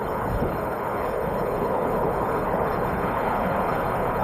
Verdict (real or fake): fake